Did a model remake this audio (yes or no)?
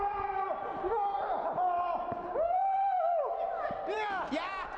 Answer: yes